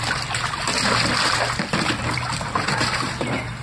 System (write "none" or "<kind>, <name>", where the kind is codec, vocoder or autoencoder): none